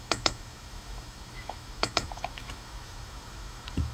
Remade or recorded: remade